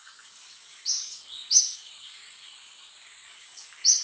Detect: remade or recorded remade